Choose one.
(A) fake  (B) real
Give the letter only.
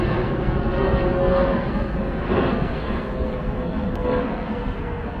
A